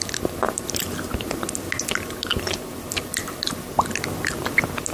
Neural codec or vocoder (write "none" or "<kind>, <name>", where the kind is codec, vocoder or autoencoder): none